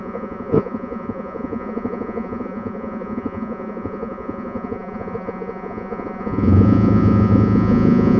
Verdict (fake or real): fake